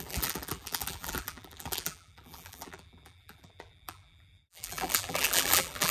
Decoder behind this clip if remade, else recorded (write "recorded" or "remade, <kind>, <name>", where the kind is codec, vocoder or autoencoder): remade, vocoder, BigVGAN v2